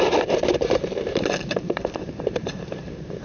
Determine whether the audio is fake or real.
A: fake